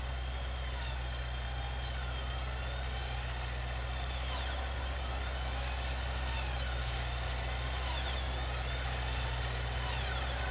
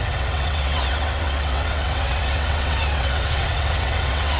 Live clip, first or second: first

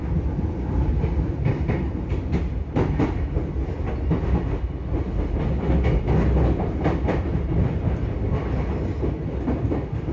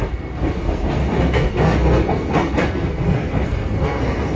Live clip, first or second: first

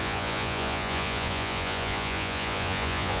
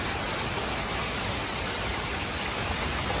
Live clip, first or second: second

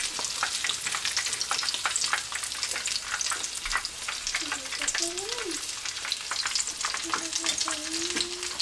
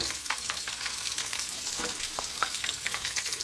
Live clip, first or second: first